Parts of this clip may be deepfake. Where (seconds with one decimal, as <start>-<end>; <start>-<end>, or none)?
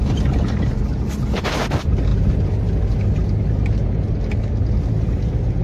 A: none